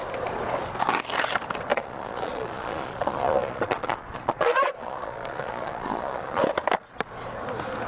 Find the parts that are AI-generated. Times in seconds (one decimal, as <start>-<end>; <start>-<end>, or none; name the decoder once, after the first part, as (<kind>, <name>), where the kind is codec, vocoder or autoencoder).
1.7-6.4 (vocoder, Vocos)